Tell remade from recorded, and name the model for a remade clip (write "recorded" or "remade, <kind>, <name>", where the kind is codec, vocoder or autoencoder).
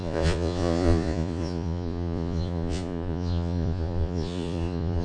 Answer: remade, vocoder, Vocos